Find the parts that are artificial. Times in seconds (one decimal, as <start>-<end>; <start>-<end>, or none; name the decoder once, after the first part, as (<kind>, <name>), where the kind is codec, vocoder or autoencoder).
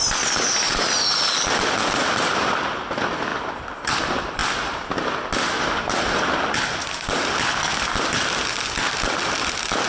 none